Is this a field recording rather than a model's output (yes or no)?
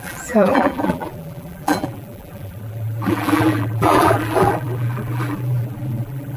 no